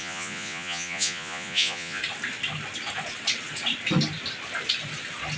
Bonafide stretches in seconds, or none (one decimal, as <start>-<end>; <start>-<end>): 2.0-5.4